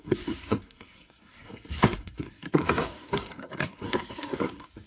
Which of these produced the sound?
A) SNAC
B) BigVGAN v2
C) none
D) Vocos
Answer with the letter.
A